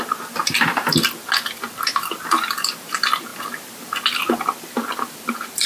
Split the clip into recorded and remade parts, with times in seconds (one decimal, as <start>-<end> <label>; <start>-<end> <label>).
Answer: 0.0-5.7 recorded